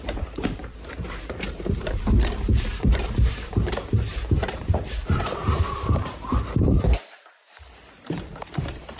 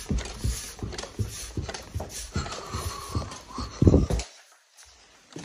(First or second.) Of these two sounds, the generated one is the first